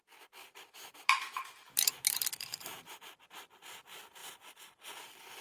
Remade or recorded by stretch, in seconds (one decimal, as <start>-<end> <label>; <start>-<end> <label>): 0.0-0.4 recorded; 0.4-3.6 remade; 3.6-5.4 recorded